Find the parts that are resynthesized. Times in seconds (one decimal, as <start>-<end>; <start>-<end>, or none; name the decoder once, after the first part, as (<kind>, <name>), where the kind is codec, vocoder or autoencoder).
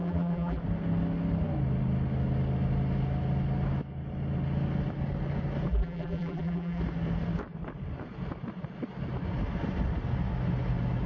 0.0-0.6 (vocoder, BigVGAN v2); 5.7-6.8